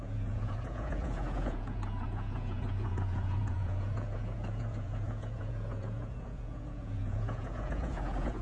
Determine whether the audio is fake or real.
fake